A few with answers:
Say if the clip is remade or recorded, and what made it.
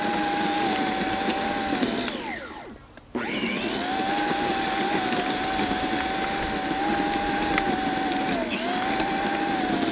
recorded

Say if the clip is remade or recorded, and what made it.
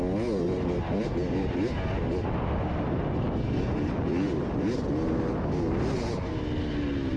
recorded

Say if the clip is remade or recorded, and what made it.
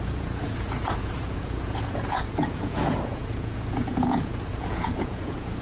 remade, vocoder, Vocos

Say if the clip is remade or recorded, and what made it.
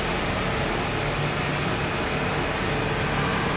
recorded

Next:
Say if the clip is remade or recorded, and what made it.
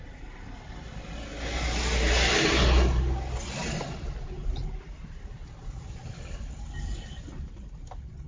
recorded